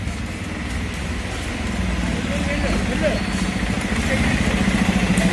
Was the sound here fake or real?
real